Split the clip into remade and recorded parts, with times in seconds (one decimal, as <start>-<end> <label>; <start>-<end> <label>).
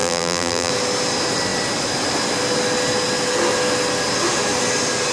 0.0-0.7 remade; 0.7-5.1 recorded